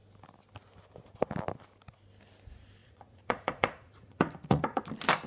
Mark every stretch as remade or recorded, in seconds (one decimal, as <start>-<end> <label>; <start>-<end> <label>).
0.0-2.8 recorded; 2.8-4.8 remade; 4.8-5.3 recorded

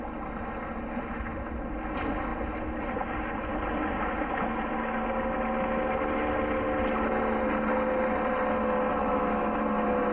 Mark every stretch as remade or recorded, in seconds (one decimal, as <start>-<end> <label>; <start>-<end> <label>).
0.0-9.0 recorded; 9.0-9.6 remade; 9.6-10.1 recorded

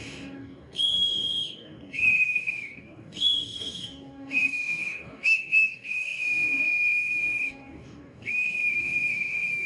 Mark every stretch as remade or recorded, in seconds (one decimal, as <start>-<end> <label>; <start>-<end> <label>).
0.0-9.7 remade

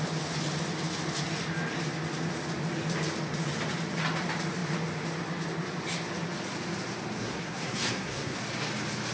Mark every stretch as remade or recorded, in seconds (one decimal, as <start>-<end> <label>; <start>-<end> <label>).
0.0-7.2 recorded; 7.2-8.4 remade; 8.4-9.1 recorded

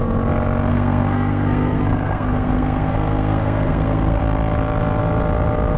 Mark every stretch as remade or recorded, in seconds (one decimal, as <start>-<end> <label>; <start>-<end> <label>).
0.0-0.7 recorded; 0.7-4.2 remade; 4.2-5.8 recorded